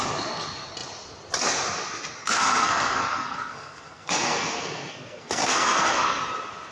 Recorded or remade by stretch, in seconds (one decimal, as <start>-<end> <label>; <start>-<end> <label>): 0.0-2.2 recorded; 2.2-6.2 remade; 6.2-6.7 recorded